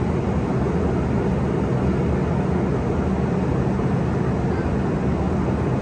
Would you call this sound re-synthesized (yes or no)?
no